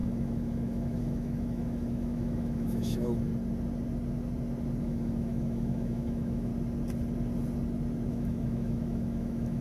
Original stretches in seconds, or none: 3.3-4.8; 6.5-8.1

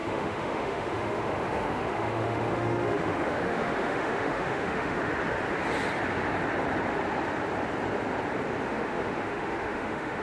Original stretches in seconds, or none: 5.1-8.6

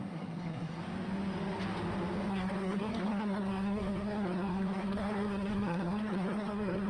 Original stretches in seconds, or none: 0.8-2.3

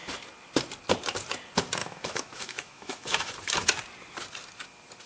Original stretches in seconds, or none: 0.0-1.8; 3.3-5.1

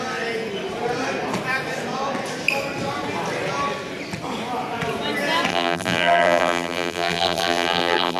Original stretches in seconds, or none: 0.0-5.5